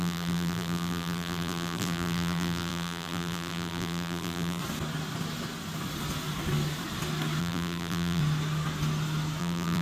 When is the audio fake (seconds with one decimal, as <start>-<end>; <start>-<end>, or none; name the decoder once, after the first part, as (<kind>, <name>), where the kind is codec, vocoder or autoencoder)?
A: 0.0-4.6 (vocoder, BigVGAN v2); 7.4-8.2; 9.4-9.8